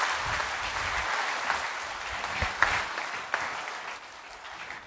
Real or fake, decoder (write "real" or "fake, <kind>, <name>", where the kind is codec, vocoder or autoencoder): real